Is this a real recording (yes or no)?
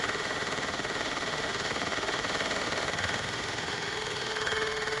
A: no